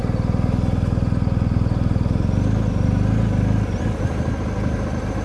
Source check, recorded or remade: recorded